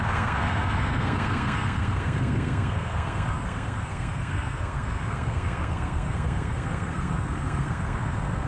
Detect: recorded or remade remade